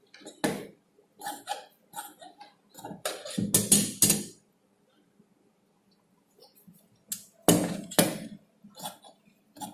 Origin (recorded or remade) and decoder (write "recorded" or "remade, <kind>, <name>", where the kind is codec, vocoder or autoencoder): recorded